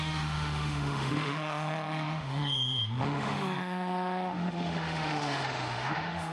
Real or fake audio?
fake